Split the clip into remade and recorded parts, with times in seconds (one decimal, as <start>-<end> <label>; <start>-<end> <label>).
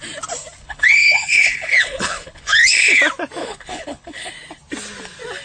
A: 0.0-0.6 recorded; 0.6-3.0 remade; 3.0-3.4 recorded; 3.4-4.3 remade; 4.3-5.4 recorded